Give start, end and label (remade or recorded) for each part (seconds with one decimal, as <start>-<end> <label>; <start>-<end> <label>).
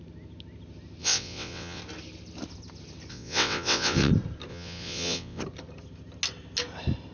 0.0-1.0 recorded; 1.0-1.8 remade; 1.8-3.1 recorded; 3.1-4.1 remade; 4.1-4.5 recorded; 4.5-5.4 remade; 5.4-7.1 recorded